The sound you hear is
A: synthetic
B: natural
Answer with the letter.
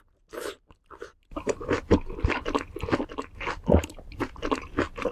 A